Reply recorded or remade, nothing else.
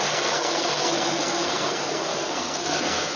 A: remade